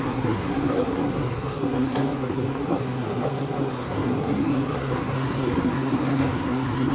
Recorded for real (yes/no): no